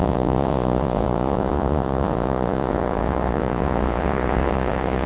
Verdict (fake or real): fake